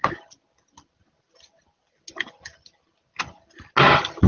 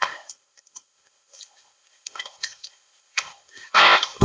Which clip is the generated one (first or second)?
second